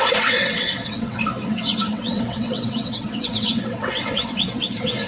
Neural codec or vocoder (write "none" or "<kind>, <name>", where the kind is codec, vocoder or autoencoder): vocoder, WaveNeXt